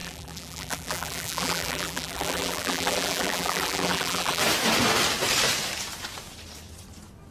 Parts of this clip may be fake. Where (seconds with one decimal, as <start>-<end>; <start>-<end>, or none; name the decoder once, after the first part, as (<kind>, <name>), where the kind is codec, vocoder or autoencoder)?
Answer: 0.0-4.4 (vocoder, BigVGAN v2)